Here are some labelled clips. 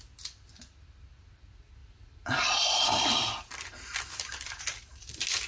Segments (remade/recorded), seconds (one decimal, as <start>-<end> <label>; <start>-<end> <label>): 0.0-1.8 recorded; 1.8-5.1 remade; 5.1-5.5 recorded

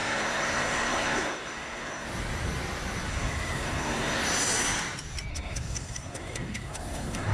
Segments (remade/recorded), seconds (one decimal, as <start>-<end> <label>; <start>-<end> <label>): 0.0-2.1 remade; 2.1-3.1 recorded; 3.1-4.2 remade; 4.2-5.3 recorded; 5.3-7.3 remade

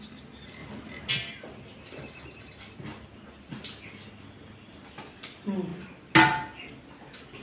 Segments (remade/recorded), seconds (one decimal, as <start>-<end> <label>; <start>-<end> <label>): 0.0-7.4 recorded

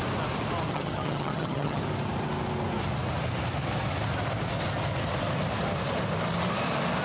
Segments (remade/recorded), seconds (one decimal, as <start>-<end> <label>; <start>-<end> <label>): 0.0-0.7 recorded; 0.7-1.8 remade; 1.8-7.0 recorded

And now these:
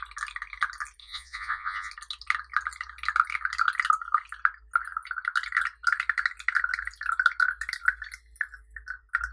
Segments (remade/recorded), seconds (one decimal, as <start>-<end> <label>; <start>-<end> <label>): 0.0-1.0 recorded; 1.0-1.9 remade; 1.9-9.3 recorded